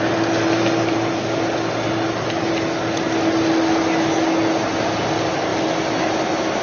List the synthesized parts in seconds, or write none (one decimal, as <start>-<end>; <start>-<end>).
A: none